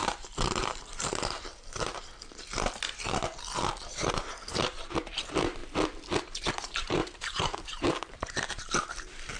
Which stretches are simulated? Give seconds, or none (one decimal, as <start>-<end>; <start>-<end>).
0.0-1.9; 3.7-5.6; 6.5-9.4